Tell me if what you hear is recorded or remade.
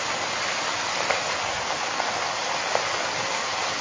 recorded